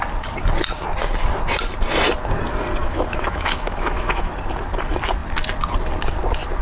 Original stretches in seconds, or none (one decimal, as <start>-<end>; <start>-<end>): 0.0-2.8; 4.3-6.6